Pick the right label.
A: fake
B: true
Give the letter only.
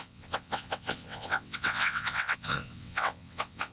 A